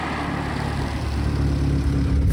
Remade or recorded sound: recorded